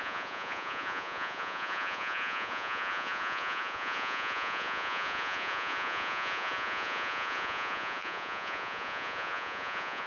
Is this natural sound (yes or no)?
no